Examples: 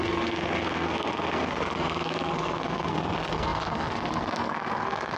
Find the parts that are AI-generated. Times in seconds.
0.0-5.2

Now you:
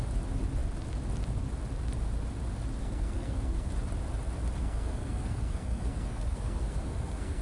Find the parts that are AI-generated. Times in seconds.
2.8-3.7; 4.6-7.4

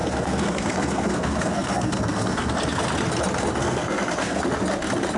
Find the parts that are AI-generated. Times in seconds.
0.0-2.5; 3.6-4.4